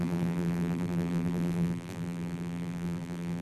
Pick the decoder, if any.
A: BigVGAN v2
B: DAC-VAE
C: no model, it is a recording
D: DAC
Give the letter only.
A